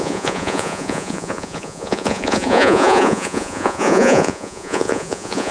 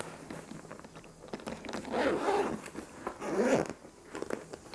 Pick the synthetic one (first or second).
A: first